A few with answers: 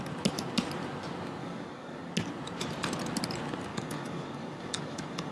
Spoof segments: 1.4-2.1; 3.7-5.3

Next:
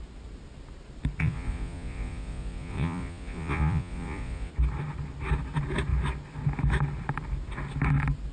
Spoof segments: 1.2-4.5

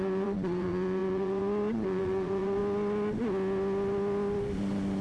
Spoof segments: 0.0-2.6